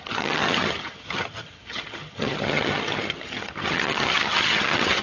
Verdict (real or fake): fake